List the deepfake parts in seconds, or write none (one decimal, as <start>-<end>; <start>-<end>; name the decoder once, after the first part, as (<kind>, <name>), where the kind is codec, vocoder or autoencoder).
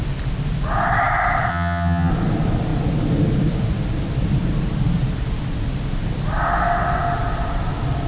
1.5-2.1 (vocoder, HiFi-GAN)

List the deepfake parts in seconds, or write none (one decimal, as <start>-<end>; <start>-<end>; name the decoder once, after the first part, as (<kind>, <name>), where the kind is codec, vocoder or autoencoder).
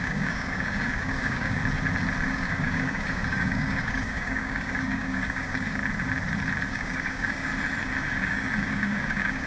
0.0-1.6 (codec, DAC); 2.2-5.8; 6.7-7.5; 8.3-9.5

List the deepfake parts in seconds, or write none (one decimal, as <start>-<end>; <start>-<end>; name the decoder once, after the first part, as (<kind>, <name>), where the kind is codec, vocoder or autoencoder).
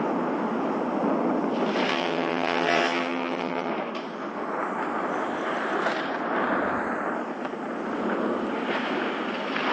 1.9-3.7 (vocoder, HiFi-GAN)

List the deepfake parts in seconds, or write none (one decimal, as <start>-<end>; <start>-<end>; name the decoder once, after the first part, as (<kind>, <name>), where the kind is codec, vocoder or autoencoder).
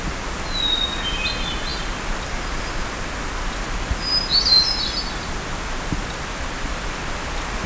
none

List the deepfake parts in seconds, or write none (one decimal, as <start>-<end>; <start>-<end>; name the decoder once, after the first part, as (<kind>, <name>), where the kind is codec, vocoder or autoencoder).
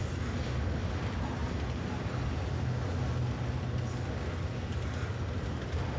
none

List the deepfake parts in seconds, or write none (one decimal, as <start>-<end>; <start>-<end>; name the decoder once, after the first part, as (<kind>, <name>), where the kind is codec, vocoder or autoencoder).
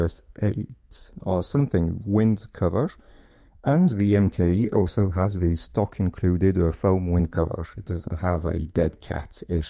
0.0-1.6 (codec, SNAC); 2.9-5.7; 7.2-9.7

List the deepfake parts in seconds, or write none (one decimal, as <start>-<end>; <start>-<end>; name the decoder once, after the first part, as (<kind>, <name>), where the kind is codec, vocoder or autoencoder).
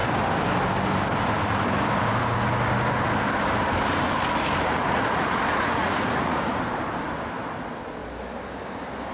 4.7-6.6 (vocoder, Vocos)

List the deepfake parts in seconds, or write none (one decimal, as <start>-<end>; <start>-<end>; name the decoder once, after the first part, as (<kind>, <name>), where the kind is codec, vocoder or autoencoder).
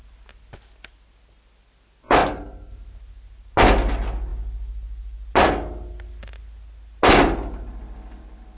none